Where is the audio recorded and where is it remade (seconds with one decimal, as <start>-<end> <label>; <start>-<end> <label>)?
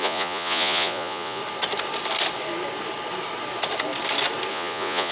0.0-1.4 remade; 1.4-4.5 recorded; 4.5-5.1 remade